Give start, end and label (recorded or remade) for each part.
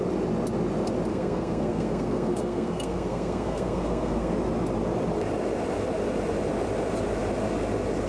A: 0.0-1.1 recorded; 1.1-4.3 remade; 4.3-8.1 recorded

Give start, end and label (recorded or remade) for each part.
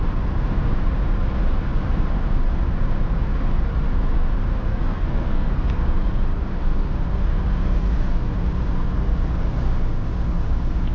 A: 0.0-4.7 recorded; 4.7-5.5 remade; 5.5-10.9 recorded